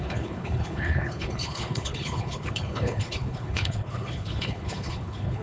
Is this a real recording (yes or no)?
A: no